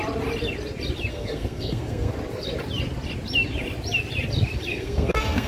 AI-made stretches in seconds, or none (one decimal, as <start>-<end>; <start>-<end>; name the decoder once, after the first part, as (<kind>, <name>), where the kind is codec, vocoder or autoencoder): 1.1-2.1 (codec, SNAC); 4.7-5.5